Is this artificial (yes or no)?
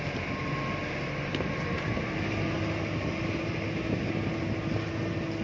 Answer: no